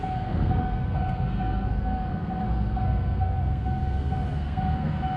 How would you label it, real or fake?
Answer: fake